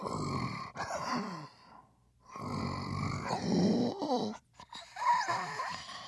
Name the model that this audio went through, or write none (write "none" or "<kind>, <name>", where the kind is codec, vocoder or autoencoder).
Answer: vocoder, BigVGAN v2